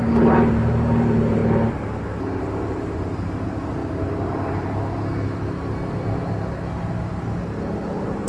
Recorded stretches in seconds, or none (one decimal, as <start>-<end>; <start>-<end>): 1.4-2.4; 3.8-7.9